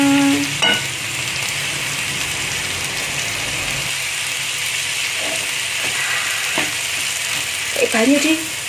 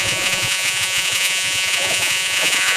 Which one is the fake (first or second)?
second